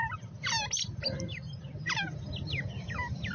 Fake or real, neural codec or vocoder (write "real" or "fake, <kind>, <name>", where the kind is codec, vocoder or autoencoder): real